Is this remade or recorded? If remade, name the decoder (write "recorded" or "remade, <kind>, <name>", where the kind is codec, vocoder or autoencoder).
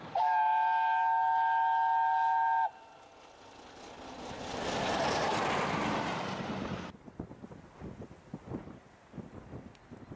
recorded